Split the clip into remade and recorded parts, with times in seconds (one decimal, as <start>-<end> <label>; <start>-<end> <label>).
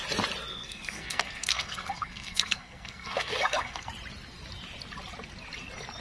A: 0.0-0.5 recorded; 0.5-3.9 remade; 3.9-6.0 recorded